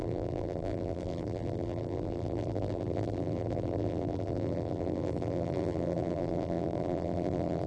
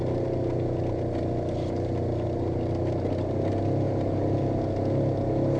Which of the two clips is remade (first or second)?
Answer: first